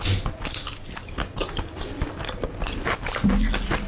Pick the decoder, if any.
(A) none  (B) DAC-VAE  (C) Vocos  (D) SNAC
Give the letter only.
A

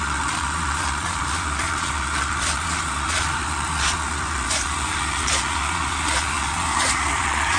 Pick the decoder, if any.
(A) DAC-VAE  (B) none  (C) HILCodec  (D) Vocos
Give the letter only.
D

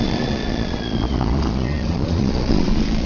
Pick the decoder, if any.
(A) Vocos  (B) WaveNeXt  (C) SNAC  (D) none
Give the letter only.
A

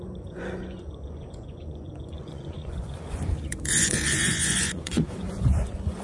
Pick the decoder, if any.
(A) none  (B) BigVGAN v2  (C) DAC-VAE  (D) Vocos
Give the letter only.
D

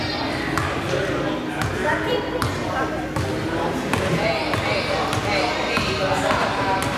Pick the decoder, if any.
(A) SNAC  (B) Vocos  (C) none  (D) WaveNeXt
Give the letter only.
C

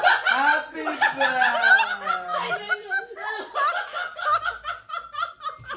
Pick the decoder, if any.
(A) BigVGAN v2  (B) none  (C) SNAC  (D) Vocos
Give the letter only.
B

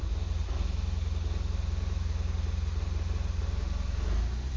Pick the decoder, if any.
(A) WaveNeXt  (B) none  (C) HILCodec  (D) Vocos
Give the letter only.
B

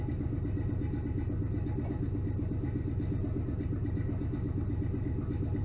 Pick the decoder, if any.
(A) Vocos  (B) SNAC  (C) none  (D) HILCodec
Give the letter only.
C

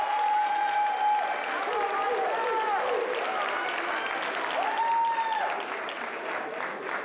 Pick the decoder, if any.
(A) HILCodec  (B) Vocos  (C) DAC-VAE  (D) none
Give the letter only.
D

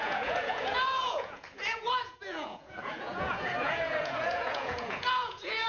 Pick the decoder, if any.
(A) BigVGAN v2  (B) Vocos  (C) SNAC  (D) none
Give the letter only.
B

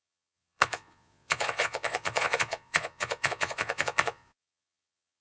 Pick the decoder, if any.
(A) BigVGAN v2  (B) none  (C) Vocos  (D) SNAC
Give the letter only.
C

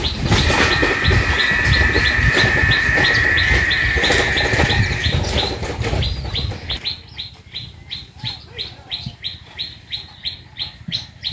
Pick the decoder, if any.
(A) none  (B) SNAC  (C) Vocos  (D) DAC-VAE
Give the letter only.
A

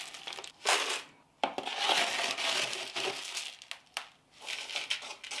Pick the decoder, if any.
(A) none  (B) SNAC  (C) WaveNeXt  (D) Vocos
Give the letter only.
A